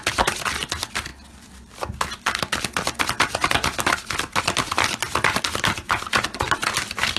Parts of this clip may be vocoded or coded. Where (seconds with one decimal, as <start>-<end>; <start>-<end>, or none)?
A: none